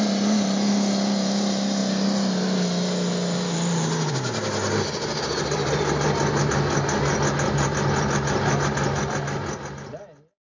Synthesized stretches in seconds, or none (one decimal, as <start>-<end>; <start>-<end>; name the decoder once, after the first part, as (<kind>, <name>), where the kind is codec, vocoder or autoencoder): none